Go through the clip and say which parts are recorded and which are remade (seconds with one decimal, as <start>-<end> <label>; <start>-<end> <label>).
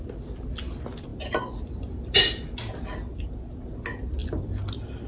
0.0-5.1 recorded